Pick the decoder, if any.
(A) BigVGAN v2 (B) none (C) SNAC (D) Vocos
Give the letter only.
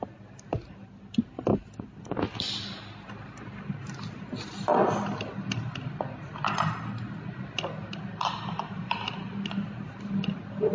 B